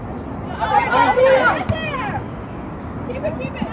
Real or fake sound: real